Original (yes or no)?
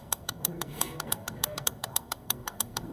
no